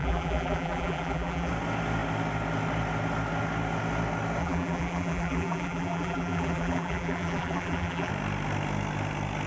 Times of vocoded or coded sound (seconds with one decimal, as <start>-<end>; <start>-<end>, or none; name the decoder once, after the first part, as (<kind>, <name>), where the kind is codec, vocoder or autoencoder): 0.0-1.5 (vocoder, BigVGAN v2); 4.4-8.1